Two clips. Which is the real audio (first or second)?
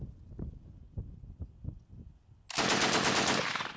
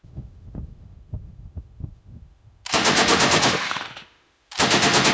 first